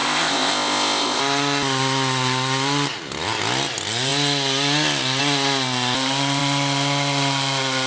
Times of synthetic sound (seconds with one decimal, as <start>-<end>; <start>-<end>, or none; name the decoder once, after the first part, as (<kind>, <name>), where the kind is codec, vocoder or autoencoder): 0.0-1.2 (codec, ZipCodec)